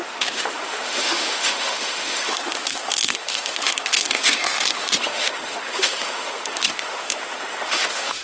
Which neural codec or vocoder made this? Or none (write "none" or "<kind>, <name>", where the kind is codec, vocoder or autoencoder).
autoencoder, DAC-VAE